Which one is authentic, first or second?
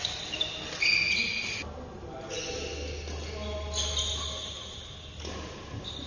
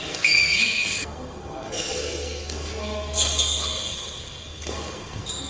first